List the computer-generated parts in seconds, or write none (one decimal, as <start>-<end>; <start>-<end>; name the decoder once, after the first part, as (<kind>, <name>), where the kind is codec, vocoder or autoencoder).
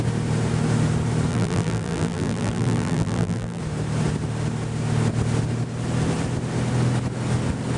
1.3-3.6 (vocoder, BigVGAN v2)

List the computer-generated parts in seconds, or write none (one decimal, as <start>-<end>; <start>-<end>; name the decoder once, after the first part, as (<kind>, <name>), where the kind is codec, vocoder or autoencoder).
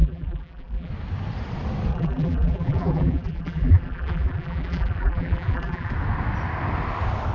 0.0-0.9 (vocoder, BigVGAN v2); 1.9-5.9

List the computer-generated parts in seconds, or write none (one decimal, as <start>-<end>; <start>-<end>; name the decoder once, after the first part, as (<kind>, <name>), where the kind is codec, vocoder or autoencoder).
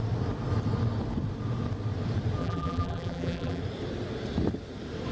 2.4-3.6 (vocoder, BigVGAN v2)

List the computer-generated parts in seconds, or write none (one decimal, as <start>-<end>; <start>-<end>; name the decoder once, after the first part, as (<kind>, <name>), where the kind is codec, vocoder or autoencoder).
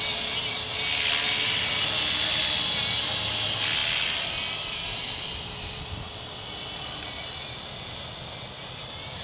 3.8-7.4 (vocoder, BigVGAN v2)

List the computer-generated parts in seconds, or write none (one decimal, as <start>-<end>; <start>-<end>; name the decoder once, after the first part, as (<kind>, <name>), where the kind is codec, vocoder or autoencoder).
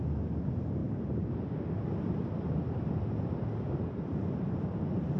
none